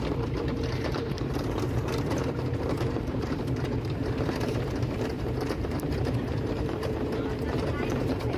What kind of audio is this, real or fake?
fake